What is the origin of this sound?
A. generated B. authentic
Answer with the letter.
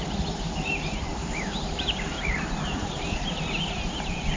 A